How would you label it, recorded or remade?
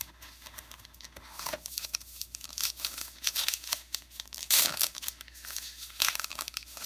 remade